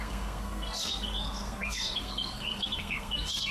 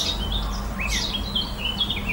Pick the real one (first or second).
second